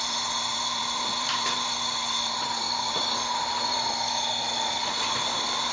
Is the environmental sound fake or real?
fake